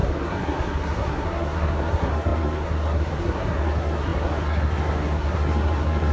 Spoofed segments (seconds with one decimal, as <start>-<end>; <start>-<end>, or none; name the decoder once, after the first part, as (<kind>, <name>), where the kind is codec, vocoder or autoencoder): 0.0-6.1 (codec, SNAC)